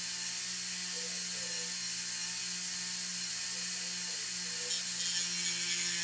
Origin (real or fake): real